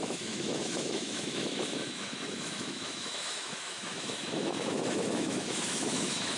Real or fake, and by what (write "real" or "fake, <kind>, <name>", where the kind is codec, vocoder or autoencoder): fake, autoencoder, DAC-VAE